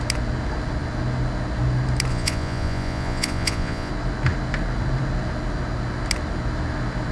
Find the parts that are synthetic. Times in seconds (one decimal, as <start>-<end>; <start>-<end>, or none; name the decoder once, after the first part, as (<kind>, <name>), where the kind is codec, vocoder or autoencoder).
2.1-3.9 (vocoder, Vocos)